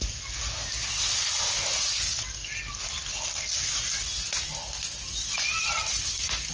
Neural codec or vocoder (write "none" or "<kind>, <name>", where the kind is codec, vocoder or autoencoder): none